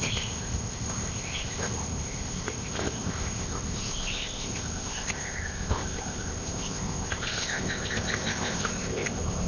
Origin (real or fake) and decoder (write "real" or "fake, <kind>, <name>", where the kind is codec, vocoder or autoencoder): fake, codec, ZipCodec